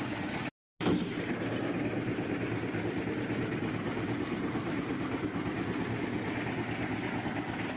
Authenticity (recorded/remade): recorded